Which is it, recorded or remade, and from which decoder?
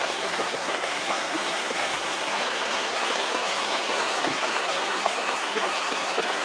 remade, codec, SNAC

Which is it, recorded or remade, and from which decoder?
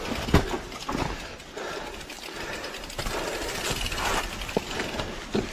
recorded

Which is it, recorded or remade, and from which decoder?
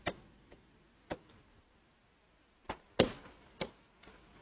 recorded